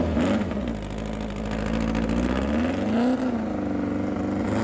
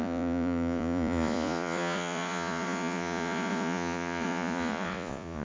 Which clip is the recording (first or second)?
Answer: first